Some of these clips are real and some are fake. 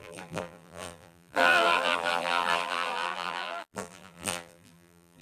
fake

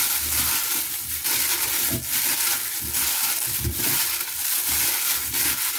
real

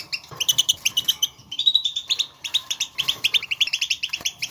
fake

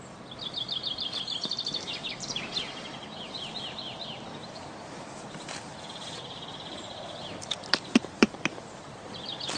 fake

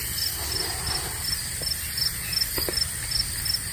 real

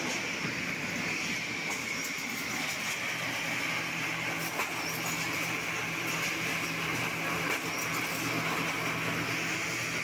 real